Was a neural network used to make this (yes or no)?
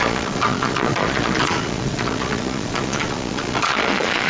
yes